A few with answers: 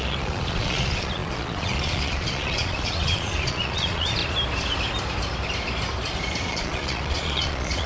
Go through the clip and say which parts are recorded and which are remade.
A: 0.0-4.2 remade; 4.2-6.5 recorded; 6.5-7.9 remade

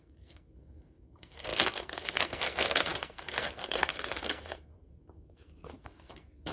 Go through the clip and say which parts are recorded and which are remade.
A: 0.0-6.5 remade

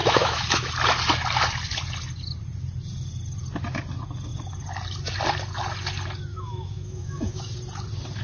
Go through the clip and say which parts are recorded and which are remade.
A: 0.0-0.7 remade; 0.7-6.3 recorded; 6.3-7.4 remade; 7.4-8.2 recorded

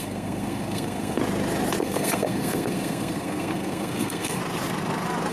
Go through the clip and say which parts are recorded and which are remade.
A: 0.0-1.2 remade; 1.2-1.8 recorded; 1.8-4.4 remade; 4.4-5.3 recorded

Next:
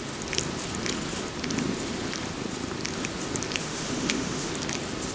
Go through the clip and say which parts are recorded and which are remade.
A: 0.0-3.6 recorded; 3.6-4.5 remade; 4.5-5.1 recorded